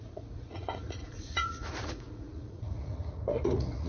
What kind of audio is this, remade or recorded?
remade